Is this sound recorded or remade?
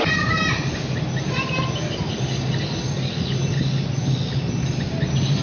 recorded